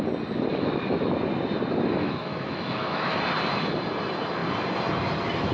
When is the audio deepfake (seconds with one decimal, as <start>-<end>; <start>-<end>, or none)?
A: 0.5-1.1; 2.0-3.2